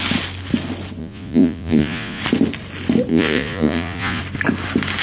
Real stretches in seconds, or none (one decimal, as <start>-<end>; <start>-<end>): 0.0-1.0; 2.2-3.1; 4.2-5.0